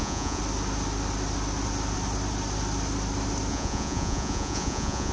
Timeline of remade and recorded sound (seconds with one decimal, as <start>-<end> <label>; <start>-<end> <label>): 0.0-0.4 remade; 0.4-3.5 recorded; 3.5-5.1 remade